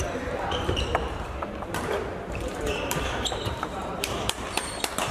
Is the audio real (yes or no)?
no